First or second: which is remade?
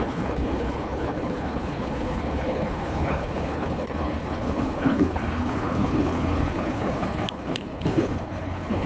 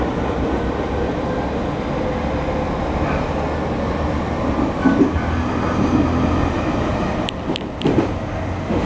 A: first